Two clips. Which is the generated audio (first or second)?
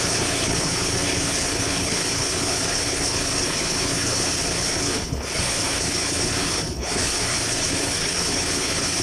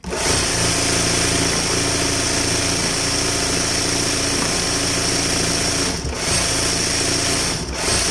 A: first